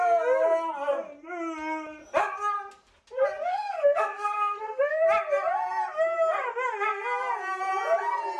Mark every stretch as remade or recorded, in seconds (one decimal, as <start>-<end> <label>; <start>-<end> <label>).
0.0-3.5 recorded; 3.5-4.8 remade; 4.8-8.4 recorded